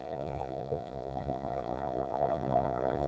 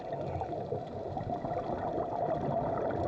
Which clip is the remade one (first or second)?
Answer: first